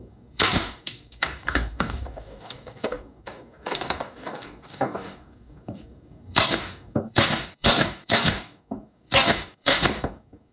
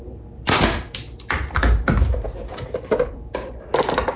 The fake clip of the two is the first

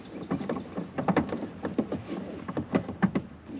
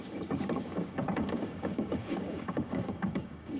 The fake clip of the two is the second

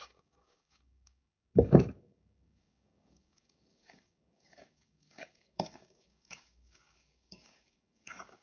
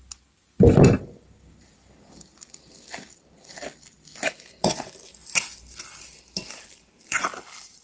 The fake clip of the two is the first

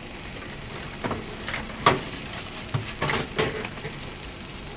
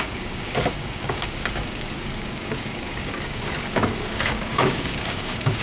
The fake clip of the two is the second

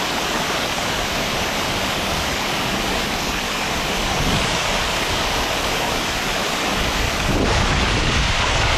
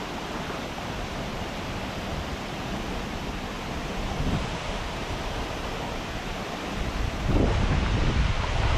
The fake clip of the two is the first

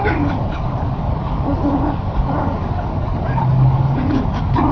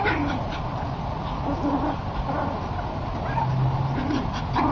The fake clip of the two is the first